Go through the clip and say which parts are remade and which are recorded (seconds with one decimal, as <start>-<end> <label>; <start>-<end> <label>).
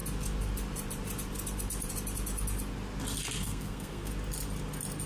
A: 0.0-3.4 recorded; 3.4-4.1 remade; 4.1-5.1 recorded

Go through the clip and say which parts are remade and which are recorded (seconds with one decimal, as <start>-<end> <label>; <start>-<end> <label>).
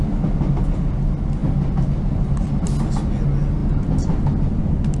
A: 0.0-5.0 recorded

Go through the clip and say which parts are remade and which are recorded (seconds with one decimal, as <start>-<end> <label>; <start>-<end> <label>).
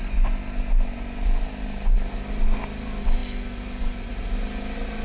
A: 0.0-5.0 recorded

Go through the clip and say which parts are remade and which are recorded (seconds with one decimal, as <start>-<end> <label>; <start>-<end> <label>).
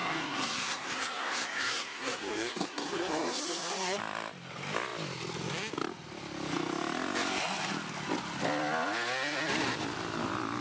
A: 0.0-4.0 remade; 4.0-10.6 recorded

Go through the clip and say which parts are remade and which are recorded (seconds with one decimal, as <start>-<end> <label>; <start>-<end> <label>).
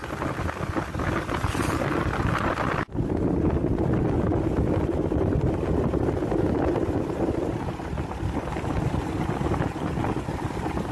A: 0.0-10.9 recorded